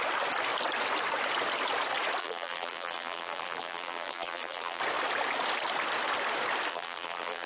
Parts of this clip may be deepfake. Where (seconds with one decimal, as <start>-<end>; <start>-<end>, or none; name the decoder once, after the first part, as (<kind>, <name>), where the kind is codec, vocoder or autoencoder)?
2.2-4.8 (vocoder, BigVGAN v2); 6.7-7.5